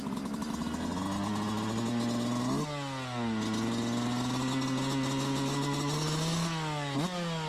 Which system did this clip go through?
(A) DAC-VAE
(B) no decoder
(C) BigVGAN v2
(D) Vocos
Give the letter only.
B